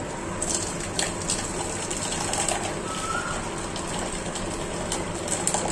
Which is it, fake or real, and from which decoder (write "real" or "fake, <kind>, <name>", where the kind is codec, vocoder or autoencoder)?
real